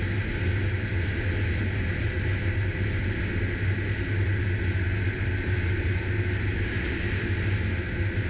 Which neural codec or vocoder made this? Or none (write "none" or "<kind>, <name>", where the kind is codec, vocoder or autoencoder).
none